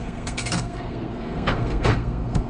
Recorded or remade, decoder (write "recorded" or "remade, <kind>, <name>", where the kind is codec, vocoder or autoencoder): remade, codec, SNAC